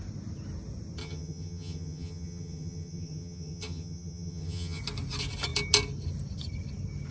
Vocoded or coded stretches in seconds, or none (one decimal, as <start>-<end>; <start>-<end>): 1.0-4.8